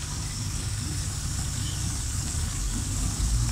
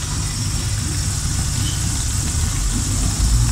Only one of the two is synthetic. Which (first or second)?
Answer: first